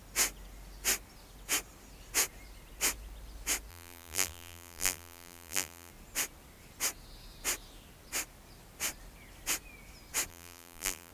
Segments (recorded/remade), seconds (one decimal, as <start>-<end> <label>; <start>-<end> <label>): 0.0-3.7 recorded; 3.7-5.9 remade; 5.9-10.3 recorded; 10.3-11.1 remade